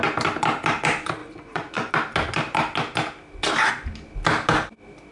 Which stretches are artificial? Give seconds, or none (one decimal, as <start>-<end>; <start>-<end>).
1.2-1.9